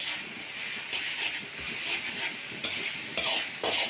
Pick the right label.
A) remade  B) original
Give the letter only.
B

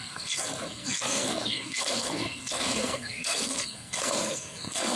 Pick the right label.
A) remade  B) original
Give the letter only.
A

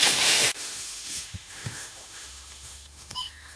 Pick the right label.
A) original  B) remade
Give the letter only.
B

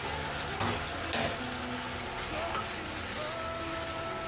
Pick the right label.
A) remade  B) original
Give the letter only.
B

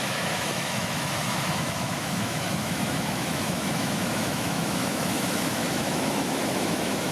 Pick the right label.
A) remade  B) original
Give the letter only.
A